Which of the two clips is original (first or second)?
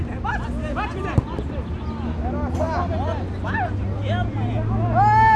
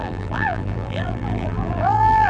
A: first